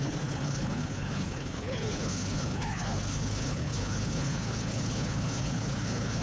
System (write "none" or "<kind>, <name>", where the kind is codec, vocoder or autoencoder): codec, HILCodec